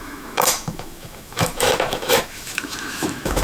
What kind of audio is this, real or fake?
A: fake